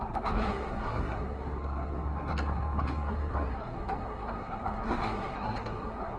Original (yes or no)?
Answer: no